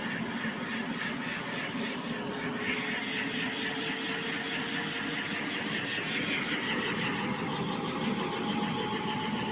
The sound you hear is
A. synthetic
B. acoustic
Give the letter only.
B